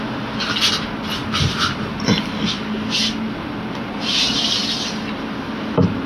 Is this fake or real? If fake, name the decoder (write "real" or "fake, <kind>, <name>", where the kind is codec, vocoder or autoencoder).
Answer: real